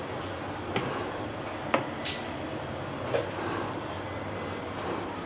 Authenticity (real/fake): real